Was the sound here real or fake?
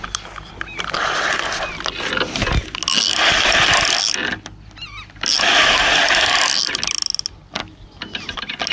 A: real